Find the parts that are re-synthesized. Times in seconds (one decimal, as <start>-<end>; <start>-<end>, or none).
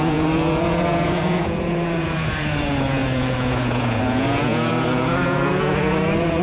0.0-6.4